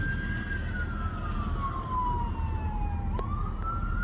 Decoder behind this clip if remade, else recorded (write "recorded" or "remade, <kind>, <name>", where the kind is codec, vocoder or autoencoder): recorded